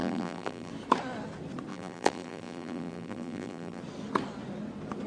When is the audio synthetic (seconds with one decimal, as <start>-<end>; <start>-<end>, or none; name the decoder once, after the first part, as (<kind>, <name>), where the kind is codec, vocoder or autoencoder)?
0.0-0.7 (vocoder, BigVGAN v2); 1.7-3.8